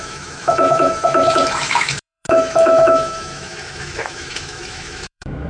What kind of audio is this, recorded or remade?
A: remade